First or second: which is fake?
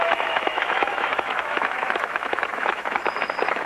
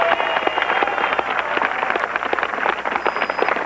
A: first